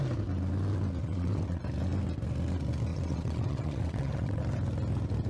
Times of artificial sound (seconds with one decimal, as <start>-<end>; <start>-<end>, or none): 1.0-1.6; 2.9-4.4